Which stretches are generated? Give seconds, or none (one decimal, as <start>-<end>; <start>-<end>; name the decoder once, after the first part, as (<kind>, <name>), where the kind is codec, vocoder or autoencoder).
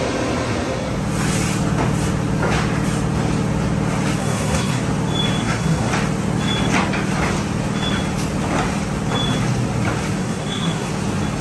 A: 4.2-4.8 (codec, SNAC); 5.4-5.9; 10.2-10.9